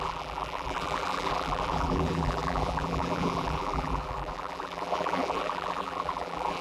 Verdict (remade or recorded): remade